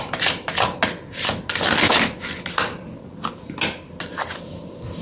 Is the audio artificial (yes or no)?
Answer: no